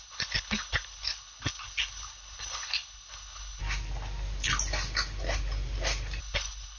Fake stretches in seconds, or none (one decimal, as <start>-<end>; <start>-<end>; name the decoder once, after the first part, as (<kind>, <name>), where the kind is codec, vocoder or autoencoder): 0.0-3.6 (codec, HILCodec); 6.2-6.8